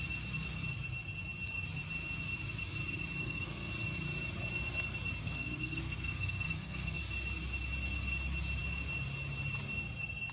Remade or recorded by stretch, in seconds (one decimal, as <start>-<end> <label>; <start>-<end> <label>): 0.0-3.2 recorded; 3.2-3.7 remade; 3.7-5.2 recorded; 5.2-7.0 remade; 7.0-10.3 recorded